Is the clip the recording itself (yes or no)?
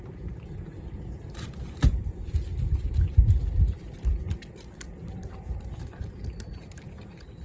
yes